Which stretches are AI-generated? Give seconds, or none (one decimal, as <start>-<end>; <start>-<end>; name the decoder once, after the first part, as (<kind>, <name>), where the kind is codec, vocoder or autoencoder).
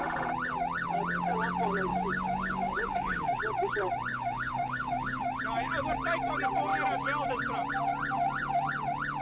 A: 1.9-3.4 (codec, DAC); 4.1-5.4